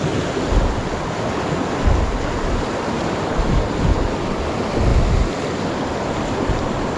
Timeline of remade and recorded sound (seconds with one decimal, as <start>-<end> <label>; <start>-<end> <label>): 0.0-7.0 recorded